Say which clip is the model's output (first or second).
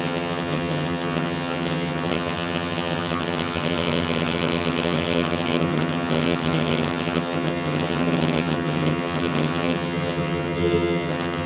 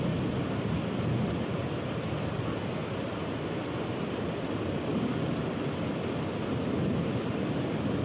first